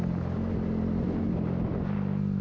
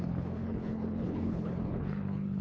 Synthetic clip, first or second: second